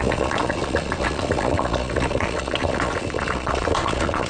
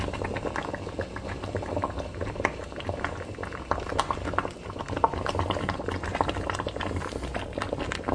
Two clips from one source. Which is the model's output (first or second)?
first